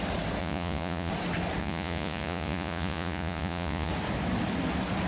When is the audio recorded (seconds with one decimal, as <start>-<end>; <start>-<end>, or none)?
0.0-0.4; 1.1-1.6; 3.9-5.1